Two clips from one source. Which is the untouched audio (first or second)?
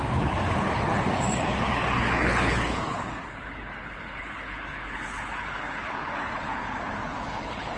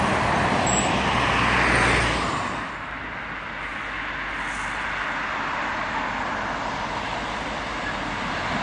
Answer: second